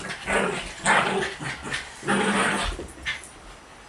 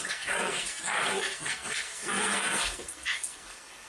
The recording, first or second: first